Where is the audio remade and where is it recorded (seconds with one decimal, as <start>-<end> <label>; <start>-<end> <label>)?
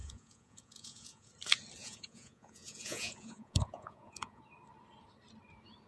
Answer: 0.0-1.3 remade; 1.3-1.8 recorded; 1.8-4.4 remade; 4.4-5.9 recorded